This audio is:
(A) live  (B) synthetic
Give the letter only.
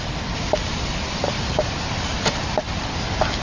A